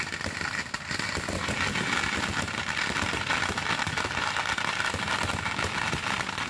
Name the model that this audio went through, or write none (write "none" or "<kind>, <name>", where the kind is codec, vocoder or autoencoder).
none